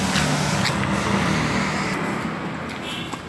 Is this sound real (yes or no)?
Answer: yes